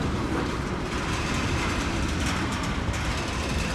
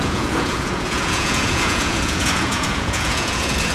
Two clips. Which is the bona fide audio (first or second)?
first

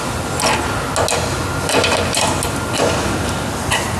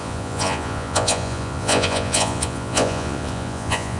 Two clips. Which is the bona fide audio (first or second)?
first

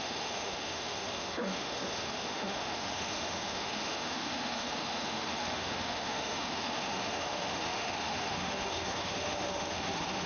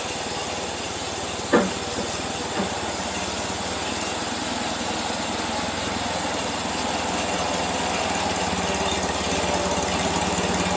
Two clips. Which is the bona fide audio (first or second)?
second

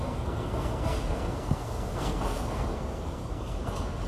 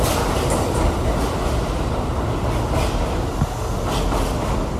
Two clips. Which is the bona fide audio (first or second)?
second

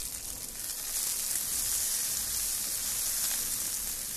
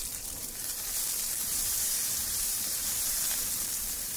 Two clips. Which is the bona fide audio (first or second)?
first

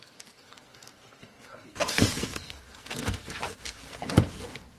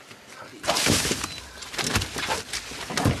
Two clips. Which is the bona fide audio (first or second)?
second